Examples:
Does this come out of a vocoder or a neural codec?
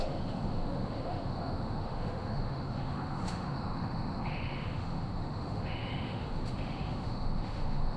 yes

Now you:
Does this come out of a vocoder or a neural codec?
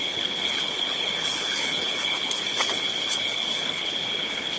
yes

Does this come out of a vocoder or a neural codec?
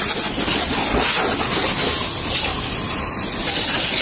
no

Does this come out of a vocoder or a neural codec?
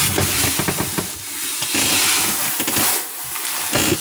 no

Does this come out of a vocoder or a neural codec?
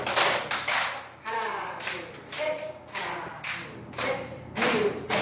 no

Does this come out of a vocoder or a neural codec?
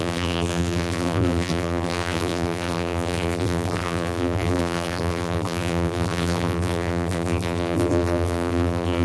yes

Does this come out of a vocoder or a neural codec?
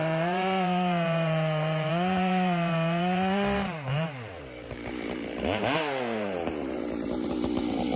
yes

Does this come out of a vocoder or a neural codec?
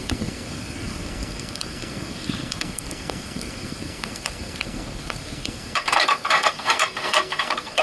yes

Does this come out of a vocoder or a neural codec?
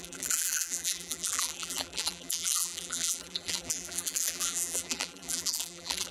yes